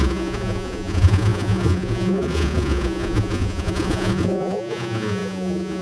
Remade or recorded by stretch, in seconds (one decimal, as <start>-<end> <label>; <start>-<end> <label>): 0.0-5.8 remade